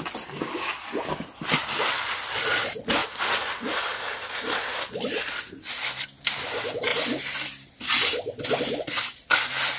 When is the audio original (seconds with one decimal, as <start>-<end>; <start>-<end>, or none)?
0.0-3.0; 5.3-6.9; 8.5-9.8